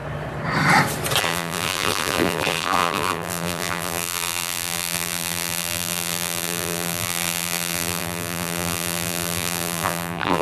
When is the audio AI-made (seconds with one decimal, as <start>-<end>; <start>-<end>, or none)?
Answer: 1.2-10.4